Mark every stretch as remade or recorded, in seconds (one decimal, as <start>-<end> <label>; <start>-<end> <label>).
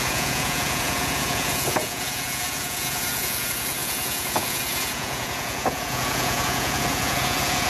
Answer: 0.0-7.7 remade